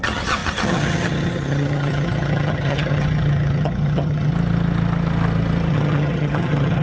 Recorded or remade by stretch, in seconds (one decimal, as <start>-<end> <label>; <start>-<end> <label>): 0.0-4.3 remade; 4.3-5.7 recorded; 5.7-6.8 remade